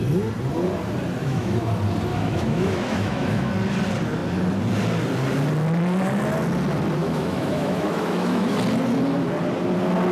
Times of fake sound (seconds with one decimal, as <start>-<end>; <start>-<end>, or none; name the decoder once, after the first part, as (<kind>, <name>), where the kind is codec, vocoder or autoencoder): 1.2-1.7 (autoencoder, DAC-VAE); 2.1-3.5; 7.0-8.5